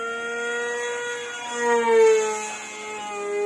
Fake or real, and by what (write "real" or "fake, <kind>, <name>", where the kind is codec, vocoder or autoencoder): real